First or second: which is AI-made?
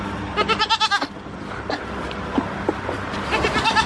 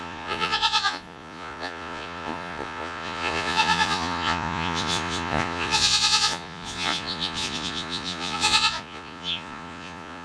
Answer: second